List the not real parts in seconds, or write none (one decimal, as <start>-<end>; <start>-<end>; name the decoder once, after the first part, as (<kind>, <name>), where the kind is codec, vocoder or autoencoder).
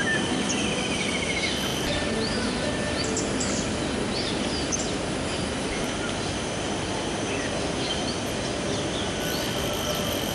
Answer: none